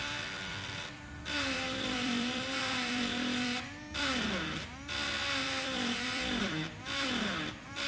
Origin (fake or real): fake